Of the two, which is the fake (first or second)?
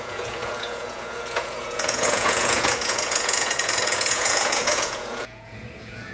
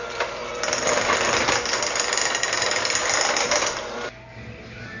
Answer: first